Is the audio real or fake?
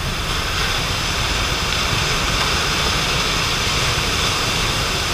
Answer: real